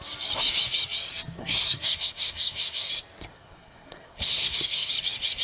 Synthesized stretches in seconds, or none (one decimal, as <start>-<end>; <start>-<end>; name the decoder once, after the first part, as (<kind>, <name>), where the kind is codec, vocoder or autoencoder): 1.4-2.9 (codec, SNAC); 3.3-4.9